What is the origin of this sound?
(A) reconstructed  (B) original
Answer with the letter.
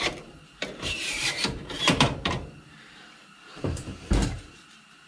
A